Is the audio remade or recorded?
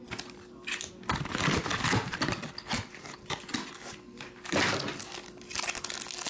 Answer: recorded